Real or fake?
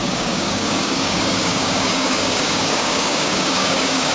fake